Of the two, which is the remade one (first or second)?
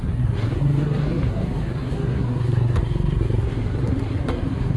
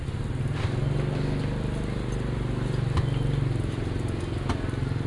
first